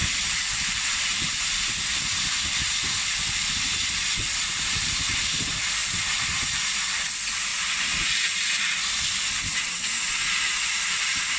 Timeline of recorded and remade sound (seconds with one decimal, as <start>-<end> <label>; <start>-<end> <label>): 0.0-3.7 remade; 3.7-5.1 recorded; 5.1-5.8 remade; 5.8-6.4 recorded; 6.4-7.5 remade; 7.5-10.2 recorded; 10.2-11.4 remade